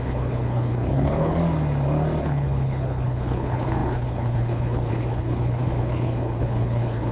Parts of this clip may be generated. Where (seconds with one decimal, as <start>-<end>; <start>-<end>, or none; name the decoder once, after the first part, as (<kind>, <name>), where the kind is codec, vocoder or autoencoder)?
0.0-1.4 (codec, HILCodec); 2.2-7.1